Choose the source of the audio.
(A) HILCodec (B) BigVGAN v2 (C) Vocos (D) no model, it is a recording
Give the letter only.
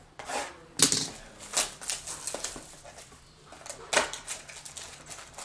D